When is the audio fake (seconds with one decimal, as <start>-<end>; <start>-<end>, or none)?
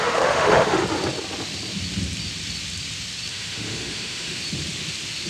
0.0-0.8; 3.3-4.4